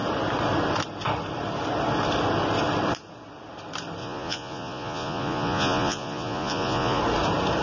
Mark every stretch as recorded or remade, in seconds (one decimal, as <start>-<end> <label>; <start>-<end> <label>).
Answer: 0.0-4.0 recorded; 4.0-7.0 remade; 7.0-7.6 recorded